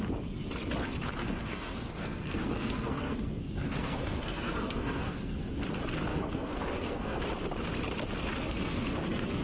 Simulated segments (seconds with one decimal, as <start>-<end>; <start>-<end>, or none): 1.2-5.5; 6.1-7.2; 8.4-9.4